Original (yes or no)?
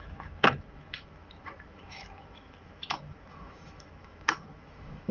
no